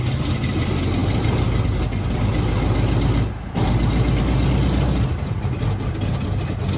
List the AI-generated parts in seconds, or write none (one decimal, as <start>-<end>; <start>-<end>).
none